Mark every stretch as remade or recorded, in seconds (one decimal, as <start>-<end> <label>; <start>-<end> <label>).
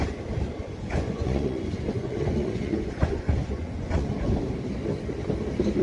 0.0-0.6 recorded; 0.6-4.1 remade; 4.1-5.8 recorded